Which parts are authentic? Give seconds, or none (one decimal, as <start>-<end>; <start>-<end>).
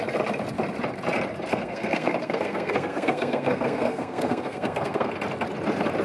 0.0-1.5; 5.1-6.0